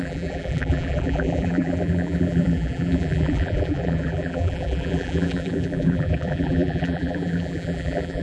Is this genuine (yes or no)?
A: no